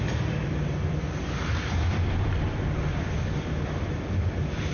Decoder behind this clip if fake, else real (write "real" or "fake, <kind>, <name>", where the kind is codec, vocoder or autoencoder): fake, vocoder, BigVGAN v2